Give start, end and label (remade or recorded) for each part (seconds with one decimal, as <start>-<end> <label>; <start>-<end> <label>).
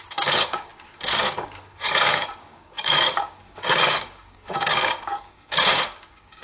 0.0-6.4 remade